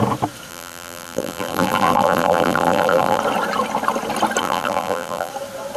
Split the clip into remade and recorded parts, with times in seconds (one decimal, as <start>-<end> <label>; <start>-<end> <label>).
0.0-0.5 recorded; 0.5-3.2 remade; 3.2-4.4 recorded; 4.4-5.3 remade; 5.3-5.8 recorded